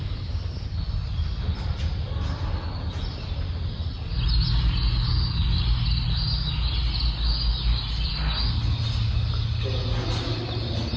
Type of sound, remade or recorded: recorded